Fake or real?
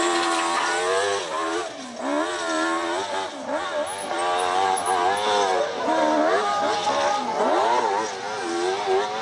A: real